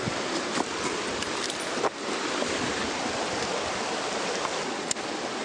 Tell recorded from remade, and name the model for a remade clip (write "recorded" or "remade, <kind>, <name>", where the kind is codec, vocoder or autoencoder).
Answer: recorded